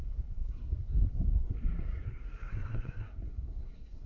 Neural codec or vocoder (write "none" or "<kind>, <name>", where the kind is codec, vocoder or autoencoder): codec, SNAC